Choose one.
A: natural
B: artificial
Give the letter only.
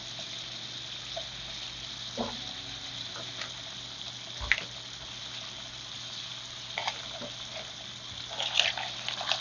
A